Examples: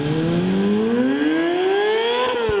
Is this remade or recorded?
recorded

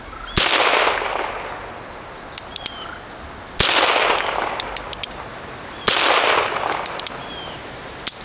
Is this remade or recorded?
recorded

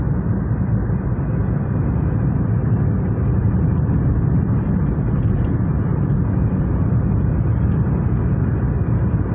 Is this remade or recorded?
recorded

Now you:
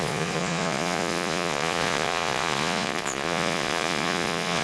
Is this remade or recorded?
remade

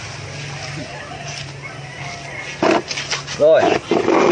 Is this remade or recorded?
recorded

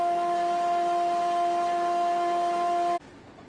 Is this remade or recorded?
recorded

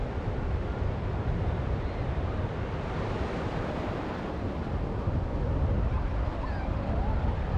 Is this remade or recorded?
remade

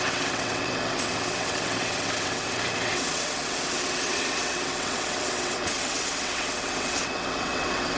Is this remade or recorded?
remade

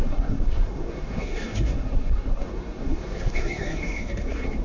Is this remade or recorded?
remade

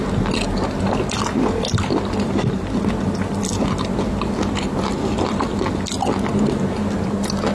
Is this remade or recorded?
recorded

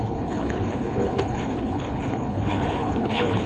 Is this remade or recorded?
remade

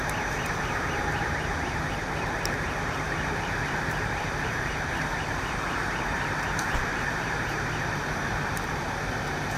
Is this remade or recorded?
remade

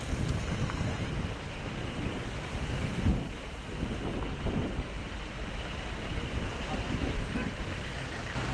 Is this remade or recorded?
recorded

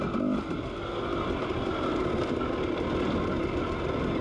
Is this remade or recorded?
recorded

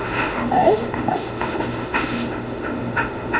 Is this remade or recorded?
remade